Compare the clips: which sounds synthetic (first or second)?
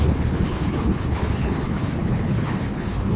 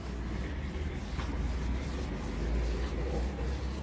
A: first